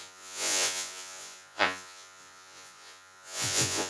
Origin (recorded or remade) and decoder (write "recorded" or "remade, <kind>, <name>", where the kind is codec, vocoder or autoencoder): remade, vocoder, Vocos